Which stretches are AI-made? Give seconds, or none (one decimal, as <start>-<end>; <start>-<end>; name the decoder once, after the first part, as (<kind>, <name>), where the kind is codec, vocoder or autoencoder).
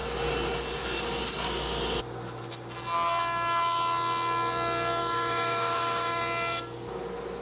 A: 5.0-6.2 (autoencoder, DAC-VAE)